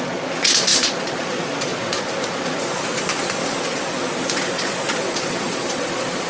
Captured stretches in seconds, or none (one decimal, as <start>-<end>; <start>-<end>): none